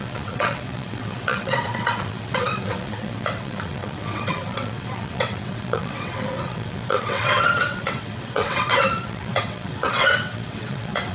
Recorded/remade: remade